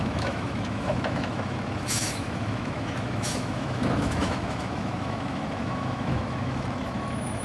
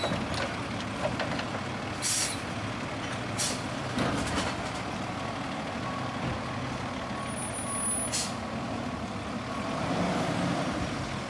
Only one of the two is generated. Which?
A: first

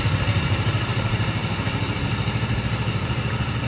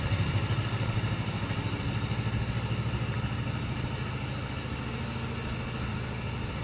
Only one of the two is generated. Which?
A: first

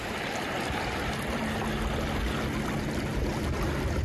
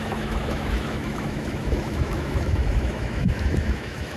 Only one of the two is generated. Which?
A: second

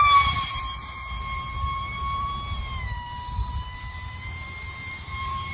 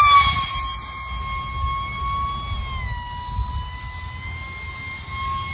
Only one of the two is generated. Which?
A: first